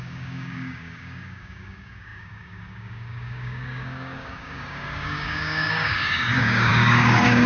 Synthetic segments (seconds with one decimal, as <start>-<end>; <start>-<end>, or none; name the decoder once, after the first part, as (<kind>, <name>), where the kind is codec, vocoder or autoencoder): 0.0-7.5 (codec, DAC)